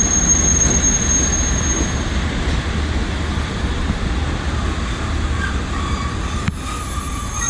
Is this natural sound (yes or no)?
yes